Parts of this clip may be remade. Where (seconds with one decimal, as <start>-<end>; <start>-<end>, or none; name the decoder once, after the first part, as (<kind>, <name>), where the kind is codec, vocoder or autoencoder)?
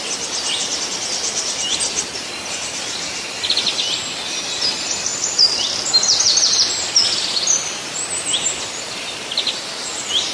none